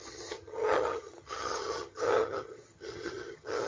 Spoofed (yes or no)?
yes